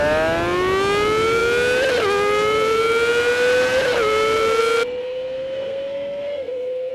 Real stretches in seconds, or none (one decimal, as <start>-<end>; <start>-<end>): 0.0-5.0